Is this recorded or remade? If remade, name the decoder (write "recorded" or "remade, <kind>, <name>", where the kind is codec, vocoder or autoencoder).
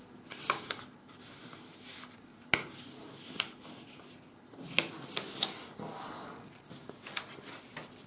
recorded